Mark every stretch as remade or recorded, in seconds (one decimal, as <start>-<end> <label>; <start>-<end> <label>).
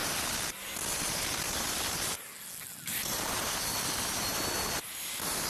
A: 0.0-5.5 recorded